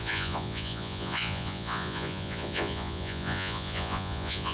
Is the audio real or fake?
fake